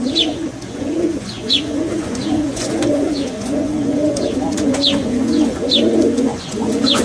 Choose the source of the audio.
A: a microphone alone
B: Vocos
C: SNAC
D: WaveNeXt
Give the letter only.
B